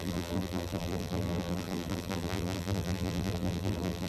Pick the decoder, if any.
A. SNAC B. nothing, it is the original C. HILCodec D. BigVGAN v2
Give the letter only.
D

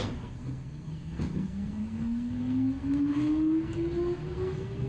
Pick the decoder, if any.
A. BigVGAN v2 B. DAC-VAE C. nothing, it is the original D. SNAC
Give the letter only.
D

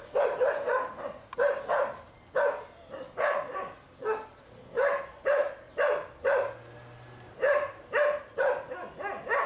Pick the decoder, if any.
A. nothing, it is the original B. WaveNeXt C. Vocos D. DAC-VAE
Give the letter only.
A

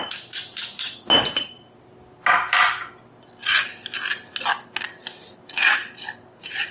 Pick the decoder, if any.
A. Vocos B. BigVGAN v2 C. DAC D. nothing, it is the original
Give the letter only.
D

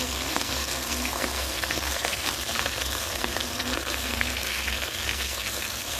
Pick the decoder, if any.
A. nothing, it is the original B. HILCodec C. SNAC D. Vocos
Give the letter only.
C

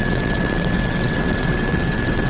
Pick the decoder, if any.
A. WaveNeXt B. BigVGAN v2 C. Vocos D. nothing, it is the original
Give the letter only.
A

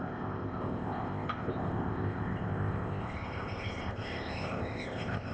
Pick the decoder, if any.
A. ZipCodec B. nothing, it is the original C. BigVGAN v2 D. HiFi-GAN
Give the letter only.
A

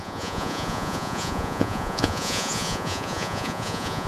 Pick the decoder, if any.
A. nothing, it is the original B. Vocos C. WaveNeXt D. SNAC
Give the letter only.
B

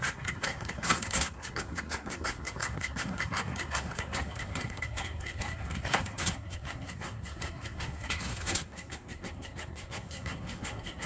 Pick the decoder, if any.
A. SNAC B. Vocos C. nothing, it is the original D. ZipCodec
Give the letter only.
A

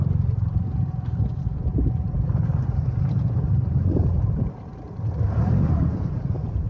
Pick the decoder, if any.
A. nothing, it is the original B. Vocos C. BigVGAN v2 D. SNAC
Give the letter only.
C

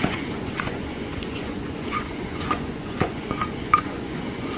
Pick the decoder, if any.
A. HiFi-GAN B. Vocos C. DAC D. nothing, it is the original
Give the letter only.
B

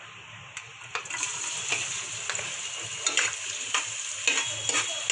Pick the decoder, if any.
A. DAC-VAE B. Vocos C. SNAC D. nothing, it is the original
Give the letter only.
D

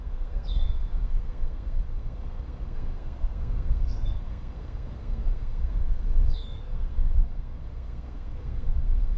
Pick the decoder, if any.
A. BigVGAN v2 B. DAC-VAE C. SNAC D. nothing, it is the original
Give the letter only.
C